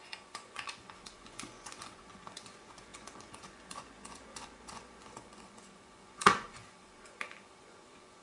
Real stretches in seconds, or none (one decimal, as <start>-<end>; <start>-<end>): none